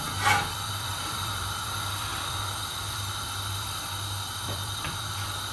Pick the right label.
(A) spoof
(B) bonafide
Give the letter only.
A